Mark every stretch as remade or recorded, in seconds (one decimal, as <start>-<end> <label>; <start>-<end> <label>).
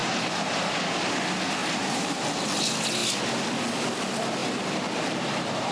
0.0-0.7 remade; 0.7-1.6 recorded; 1.6-2.2 remade; 2.2-4.4 recorded; 4.4-5.7 remade